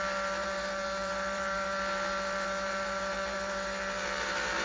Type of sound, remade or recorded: remade